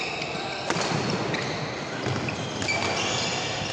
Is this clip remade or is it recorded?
recorded